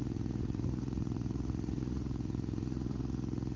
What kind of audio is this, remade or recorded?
remade